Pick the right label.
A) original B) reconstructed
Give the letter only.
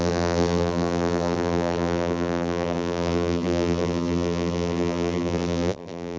B